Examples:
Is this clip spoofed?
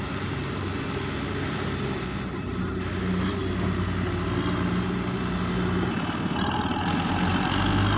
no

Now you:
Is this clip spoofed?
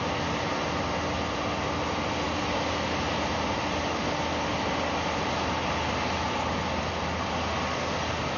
no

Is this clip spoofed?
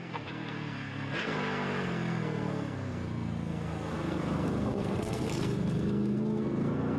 yes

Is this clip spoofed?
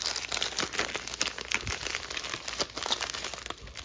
no